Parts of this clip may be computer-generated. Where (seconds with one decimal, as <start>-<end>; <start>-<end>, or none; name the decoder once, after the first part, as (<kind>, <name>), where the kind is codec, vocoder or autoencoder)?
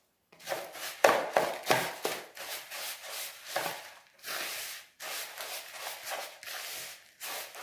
none